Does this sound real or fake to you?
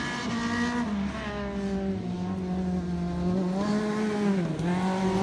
real